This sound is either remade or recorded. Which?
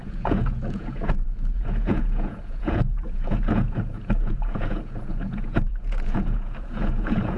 remade